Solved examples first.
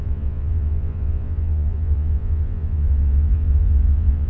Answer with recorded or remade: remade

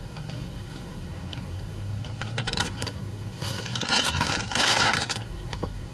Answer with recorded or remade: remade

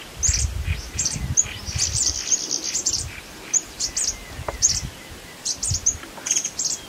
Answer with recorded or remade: remade